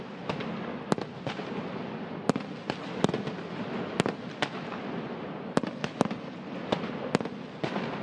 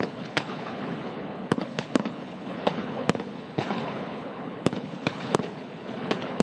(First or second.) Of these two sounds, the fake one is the second